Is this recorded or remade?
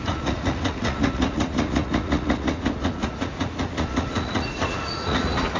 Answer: remade